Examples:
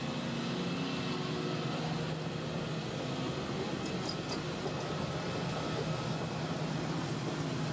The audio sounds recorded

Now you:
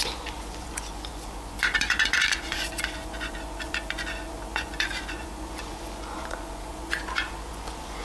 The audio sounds remade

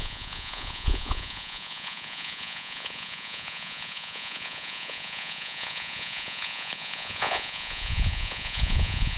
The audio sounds remade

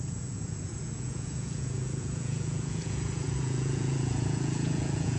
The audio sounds remade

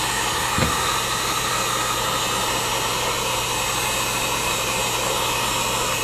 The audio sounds recorded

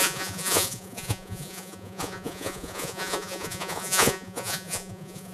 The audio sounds remade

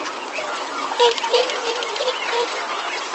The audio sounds remade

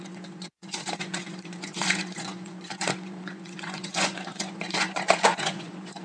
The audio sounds remade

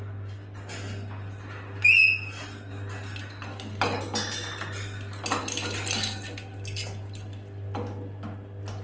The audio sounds recorded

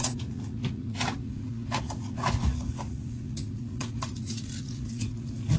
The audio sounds remade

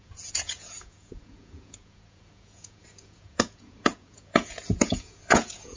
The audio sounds remade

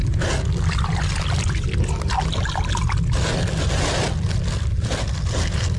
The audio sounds recorded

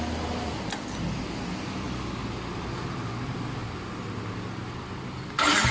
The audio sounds recorded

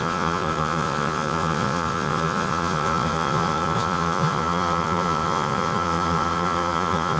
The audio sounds remade